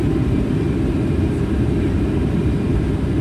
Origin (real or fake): fake